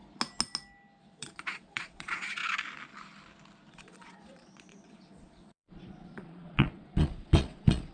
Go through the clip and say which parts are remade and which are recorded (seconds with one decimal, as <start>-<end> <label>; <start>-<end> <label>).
0.0-1.0 recorded; 1.0-2.4 remade; 2.4-3.7 recorded; 3.7-7.9 remade